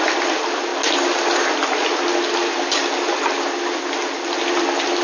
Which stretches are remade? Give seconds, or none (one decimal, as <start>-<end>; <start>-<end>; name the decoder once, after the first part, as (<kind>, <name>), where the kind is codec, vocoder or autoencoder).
none